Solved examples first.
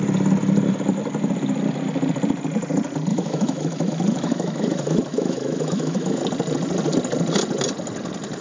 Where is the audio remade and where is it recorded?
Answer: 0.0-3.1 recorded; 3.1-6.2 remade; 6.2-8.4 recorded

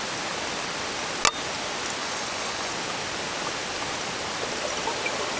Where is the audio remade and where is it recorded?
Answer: 0.0-2.0 recorded; 2.0-2.7 remade; 2.7-5.4 recorded

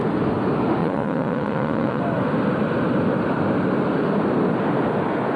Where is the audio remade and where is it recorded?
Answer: 0.0-0.8 recorded; 0.8-2.0 remade; 2.0-5.4 recorded

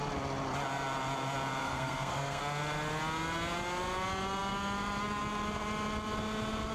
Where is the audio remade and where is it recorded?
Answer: 0.0-1.6 recorded; 1.6-2.4 remade; 2.4-6.7 recorded